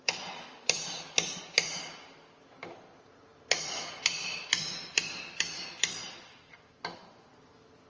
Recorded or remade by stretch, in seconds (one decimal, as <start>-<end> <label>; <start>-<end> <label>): 0.0-7.9 recorded